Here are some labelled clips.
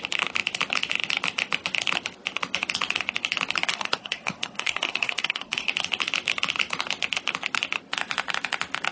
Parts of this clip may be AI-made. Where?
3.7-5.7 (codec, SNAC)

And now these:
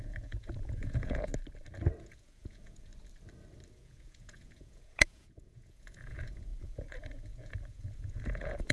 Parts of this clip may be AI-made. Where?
0.0-1.3 (vocoder, Vocos); 2.0-2.9; 3.7-8.7

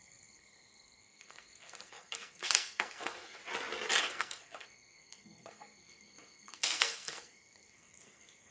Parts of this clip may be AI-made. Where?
0.0-3.4 (codec, SNAC); 4.0-8.5

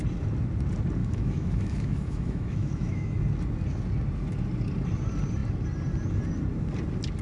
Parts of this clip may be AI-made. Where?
1.0-3.2 (autoencoder, DAC-VAE)